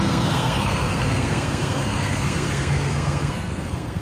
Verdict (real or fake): fake